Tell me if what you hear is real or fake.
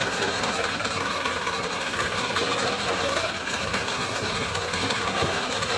fake